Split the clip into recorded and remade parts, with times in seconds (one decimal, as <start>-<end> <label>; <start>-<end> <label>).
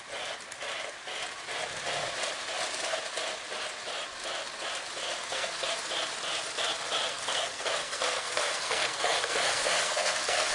0.0-5.0 recorded; 5.0-5.7 remade; 5.7-7.1 recorded; 7.1-10.5 remade